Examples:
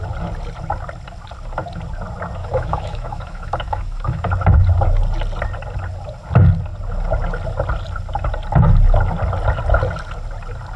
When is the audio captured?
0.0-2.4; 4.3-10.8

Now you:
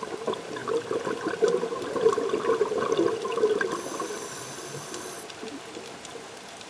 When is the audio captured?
0.0-6.7

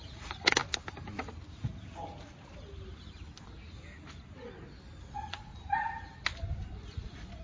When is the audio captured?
0.6-5.0; 5.5-6.6

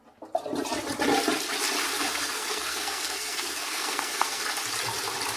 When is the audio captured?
0.0-1.9; 4.4-5.4

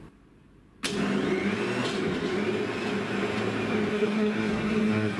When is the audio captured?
0.0-3.9